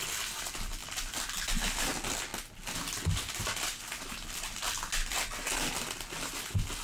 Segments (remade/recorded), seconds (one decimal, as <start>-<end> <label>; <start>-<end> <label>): 0.0-2.3 remade; 2.3-3.3 recorded; 3.3-5.5 remade; 5.5-6.3 recorded; 6.3-6.8 remade